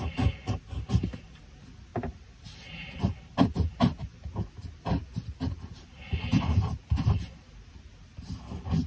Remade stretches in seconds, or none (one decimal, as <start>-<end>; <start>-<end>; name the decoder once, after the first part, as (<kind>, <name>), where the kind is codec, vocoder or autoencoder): none